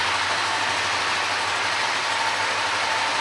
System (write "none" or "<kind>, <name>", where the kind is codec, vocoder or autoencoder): none